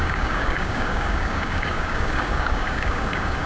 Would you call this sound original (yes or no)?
no